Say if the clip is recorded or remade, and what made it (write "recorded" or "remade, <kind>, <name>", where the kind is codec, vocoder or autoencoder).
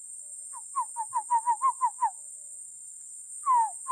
recorded